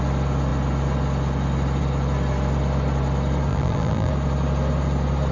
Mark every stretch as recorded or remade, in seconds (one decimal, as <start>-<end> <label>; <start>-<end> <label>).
0.0-3.5 recorded; 3.5-4.1 remade; 4.1-5.3 recorded